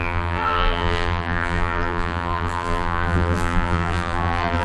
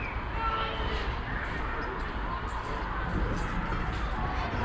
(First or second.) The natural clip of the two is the second